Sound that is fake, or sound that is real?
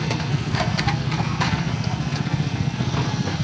fake